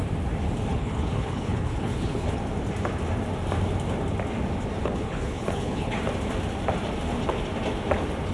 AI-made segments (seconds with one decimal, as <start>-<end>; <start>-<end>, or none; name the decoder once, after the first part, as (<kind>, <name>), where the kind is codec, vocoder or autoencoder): 0.7-2.4 (codec, HILCodec); 4.8-6.0